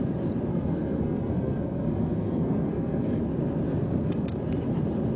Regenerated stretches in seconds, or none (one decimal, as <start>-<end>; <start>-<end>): 0.5-3.2; 3.8-4.4